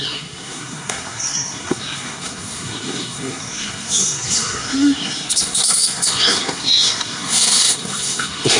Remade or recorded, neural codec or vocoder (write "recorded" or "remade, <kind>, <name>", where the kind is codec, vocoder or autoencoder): remade, codec, SNAC